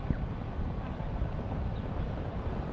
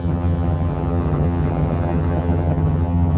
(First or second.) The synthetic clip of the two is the second